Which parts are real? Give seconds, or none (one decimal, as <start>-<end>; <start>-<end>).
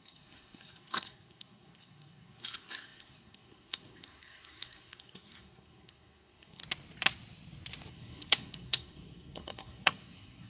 6.6-7.9